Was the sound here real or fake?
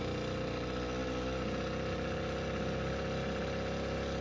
real